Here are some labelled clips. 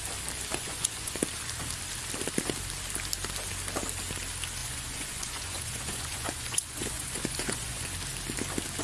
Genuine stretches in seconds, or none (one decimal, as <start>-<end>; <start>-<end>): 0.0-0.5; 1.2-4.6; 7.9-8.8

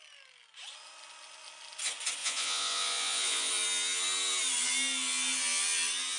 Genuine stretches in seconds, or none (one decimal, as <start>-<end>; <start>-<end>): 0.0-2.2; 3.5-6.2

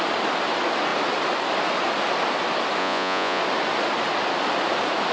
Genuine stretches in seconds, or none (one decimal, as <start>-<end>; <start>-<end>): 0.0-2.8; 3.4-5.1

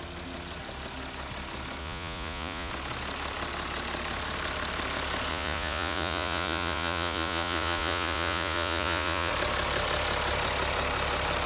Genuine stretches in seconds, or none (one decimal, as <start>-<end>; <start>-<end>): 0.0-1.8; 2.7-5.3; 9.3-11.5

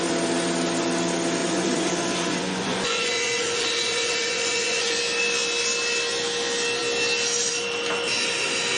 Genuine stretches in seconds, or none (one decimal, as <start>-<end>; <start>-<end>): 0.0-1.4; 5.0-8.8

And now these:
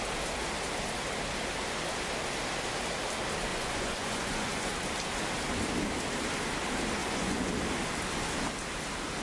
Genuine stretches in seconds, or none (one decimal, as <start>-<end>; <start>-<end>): 0.0-3.5; 4.7-7.0; 7.5-9.2

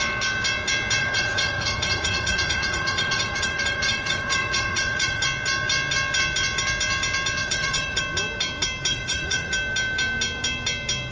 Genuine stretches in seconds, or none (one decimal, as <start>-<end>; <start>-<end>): 0.0-1.0; 5.2-7.4; 8.0-8.9; 9.5-11.1